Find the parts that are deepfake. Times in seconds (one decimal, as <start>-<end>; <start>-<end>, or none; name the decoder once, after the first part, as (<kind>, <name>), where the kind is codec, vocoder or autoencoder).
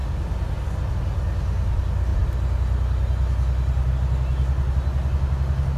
none